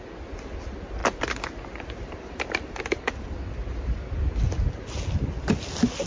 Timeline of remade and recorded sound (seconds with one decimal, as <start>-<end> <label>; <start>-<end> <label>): 0.0-6.1 recorded